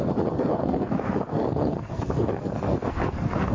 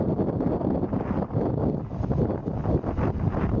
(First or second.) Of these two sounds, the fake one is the first